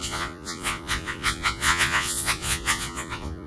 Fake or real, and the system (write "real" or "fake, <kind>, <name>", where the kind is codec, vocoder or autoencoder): fake, vocoder, Vocos